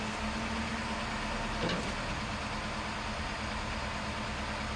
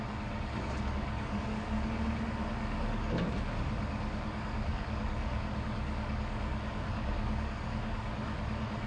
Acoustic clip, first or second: first